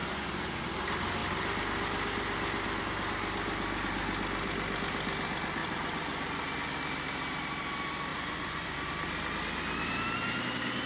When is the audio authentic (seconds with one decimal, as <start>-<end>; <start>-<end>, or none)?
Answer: 0.6-5.6; 6.7-8.1; 8.9-10.9